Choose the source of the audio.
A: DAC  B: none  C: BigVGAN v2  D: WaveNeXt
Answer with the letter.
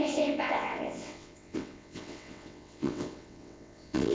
D